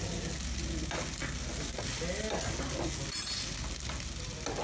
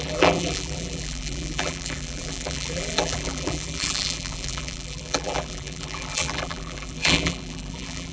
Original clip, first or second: first